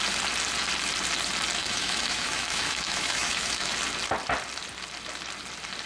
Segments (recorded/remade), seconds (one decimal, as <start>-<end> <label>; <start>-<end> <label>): 0.0-1.6 recorded; 1.6-3.7 remade; 3.7-5.9 recorded